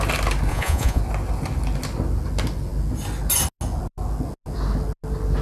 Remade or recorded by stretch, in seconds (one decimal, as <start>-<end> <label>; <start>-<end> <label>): 0.0-0.5 recorded; 0.5-1.0 remade; 1.0-5.4 recorded